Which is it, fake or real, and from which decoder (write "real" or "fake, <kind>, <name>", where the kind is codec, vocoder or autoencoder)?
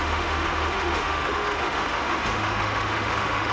fake, autoencoder, DAC-VAE